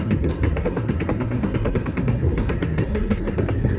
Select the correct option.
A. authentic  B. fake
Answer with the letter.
B